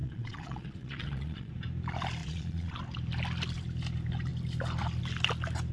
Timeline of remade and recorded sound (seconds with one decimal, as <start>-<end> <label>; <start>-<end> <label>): 0.0-1.5 remade; 1.5-2.2 recorded; 2.2-2.8 remade; 2.8-5.7 recorded